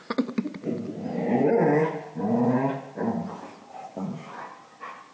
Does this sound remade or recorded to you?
recorded